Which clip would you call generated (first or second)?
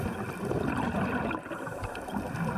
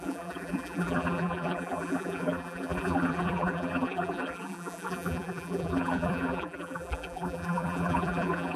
second